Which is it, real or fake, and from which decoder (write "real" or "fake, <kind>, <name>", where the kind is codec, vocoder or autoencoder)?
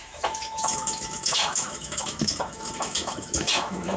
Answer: fake, autoencoder, DAC-VAE